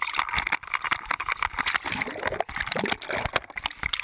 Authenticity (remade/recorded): recorded